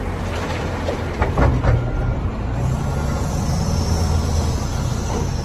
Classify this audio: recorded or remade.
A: remade